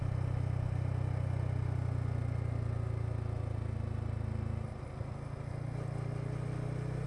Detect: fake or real real